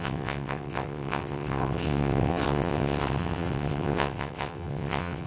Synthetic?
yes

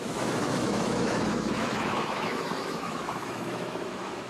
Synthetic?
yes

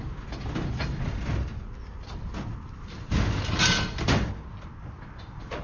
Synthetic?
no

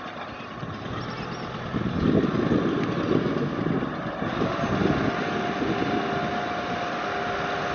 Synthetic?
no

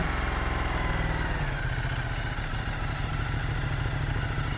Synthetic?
no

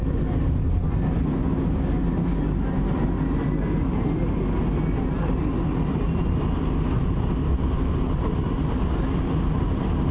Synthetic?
no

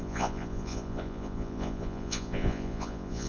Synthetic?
yes